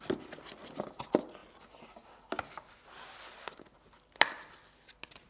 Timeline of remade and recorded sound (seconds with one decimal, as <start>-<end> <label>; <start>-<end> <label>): 0.0-5.3 recorded